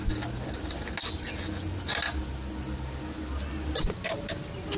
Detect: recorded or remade recorded